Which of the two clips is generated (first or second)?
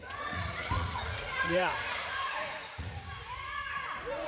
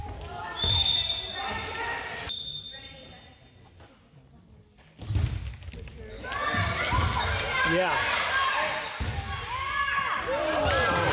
first